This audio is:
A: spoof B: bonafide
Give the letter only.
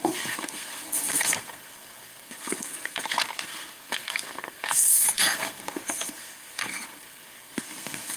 A